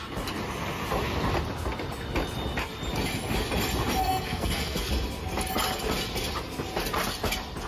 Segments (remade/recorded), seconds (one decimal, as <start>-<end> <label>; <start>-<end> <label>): 0.0-4.0 recorded; 4.0-4.9 remade; 4.9-7.7 recorded